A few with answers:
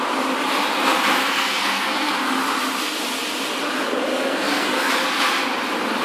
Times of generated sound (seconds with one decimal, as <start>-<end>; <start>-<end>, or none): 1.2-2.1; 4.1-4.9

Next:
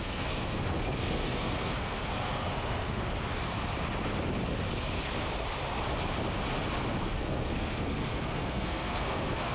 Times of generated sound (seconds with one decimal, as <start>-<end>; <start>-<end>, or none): 0.0-3.0; 7.0-9.5

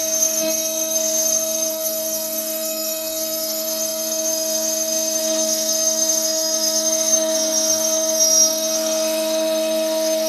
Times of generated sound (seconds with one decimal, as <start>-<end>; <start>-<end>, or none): 0.0-10.3